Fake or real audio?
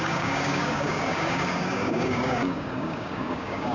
fake